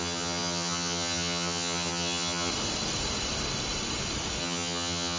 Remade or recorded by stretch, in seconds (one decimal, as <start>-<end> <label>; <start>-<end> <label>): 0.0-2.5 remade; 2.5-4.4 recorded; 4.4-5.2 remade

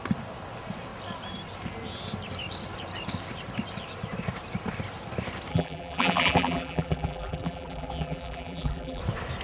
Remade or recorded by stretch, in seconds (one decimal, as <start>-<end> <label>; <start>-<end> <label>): 0.0-5.5 recorded; 5.5-9.0 remade; 9.0-9.4 recorded

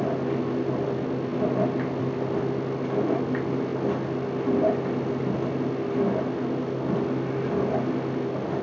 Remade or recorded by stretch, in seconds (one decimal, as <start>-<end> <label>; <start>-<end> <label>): 0.0-8.6 recorded

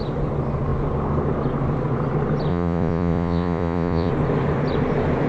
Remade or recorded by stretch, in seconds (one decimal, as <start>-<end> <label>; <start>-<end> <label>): 0.0-2.5 recorded; 2.5-4.1 remade; 4.1-5.3 recorded